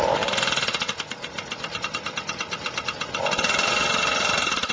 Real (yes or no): no